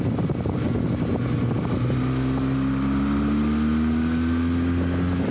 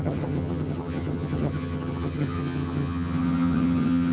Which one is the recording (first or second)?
first